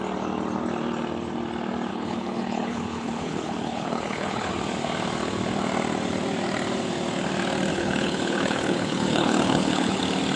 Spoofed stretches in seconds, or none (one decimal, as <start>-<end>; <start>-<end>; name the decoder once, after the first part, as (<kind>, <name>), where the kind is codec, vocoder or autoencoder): 1.9-4.5 (codec, HILCodec); 7.7-10.0